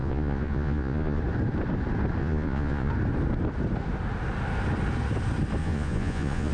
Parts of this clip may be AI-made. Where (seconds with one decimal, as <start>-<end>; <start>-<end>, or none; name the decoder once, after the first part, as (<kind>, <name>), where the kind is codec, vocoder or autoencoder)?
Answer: 0.0-1.2 (vocoder, Vocos); 2.2-2.9; 5.6-6.5